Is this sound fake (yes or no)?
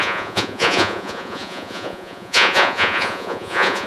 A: yes